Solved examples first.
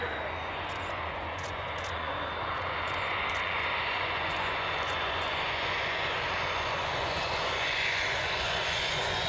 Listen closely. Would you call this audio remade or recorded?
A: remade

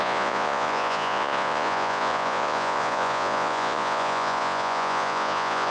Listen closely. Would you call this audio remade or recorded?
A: remade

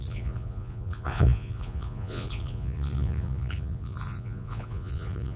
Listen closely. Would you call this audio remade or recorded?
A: remade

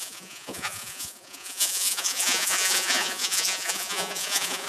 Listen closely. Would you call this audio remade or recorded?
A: remade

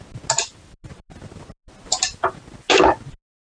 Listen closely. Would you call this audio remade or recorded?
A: recorded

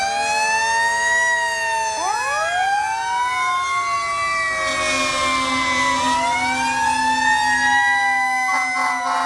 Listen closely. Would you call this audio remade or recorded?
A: recorded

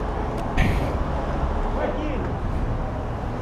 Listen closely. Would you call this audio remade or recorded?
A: recorded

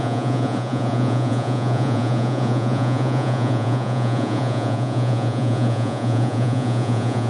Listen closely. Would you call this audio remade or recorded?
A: remade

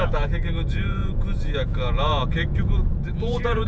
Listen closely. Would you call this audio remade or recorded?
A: remade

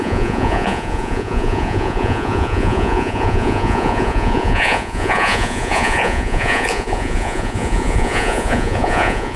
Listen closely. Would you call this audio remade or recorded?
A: remade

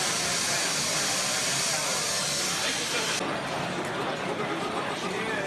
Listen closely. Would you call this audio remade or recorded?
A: recorded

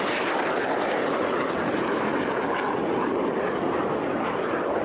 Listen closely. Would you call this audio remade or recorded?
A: recorded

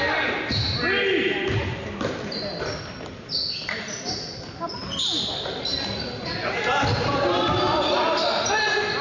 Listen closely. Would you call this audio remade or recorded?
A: recorded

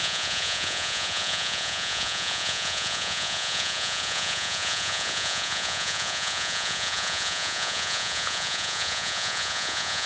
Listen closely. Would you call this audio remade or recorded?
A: remade